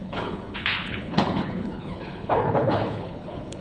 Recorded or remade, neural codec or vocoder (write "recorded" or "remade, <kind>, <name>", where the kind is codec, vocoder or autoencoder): remade, codec, HILCodec